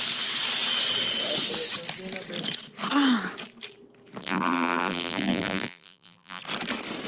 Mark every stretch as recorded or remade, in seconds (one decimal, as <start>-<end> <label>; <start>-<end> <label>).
0.0-4.2 recorded; 4.2-6.4 remade; 6.4-7.1 recorded